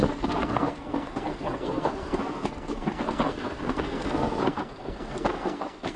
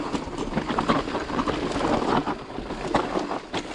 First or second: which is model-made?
first